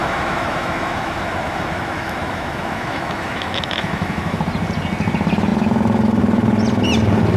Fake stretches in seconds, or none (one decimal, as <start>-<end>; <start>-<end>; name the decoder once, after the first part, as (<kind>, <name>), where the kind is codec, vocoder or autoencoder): 0.0-4.4 (autoencoder, DAC-VAE)